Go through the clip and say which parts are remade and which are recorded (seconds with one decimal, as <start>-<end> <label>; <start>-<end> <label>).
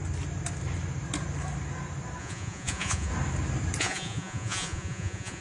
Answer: 0.0-2.2 recorded; 2.2-3.1 remade; 3.1-3.8 recorded; 3.8-5.4 remade